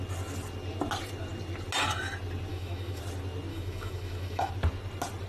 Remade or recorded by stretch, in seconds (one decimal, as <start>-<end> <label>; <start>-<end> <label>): 0.0-2.5 recorded; 2.5-3.0 remade; 3.0-3.5 recorded; 3.5-4.5 remade; 4.5-5.3 recorded